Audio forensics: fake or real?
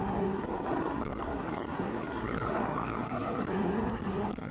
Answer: fake